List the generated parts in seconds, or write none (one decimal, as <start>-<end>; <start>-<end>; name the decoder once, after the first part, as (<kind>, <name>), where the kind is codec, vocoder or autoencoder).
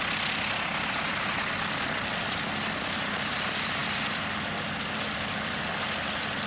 none